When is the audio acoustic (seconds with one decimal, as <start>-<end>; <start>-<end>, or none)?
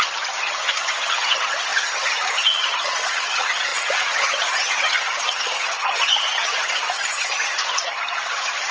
none